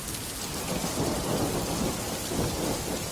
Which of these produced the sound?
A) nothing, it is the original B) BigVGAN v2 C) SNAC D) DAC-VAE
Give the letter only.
A